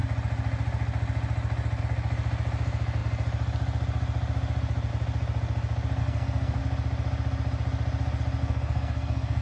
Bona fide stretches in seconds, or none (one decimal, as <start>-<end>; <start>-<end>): 0.0-6.0; 6.6-8.4